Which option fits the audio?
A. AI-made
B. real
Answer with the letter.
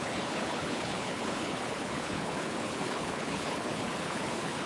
A